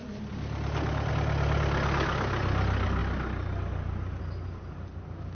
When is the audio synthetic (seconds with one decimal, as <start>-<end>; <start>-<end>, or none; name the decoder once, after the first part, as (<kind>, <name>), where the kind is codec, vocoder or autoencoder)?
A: none